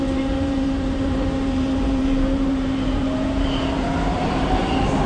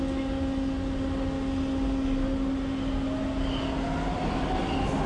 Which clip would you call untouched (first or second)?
second